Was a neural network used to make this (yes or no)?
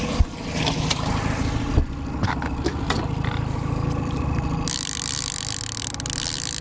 no